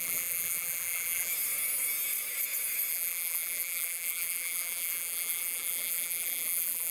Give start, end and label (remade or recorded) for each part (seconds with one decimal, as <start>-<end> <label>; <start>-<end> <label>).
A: 0.0-1.3 remade; 1.3-2.9 recorded; 2.9-6.9 remade